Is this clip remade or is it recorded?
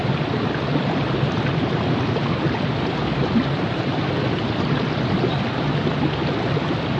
remade